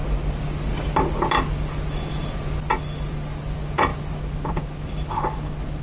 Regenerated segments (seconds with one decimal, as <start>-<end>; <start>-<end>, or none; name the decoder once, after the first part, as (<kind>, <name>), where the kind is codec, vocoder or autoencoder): none